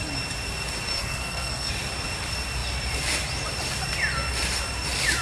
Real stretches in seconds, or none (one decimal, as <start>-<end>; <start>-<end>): 0.0-0.9; 1.7-5.2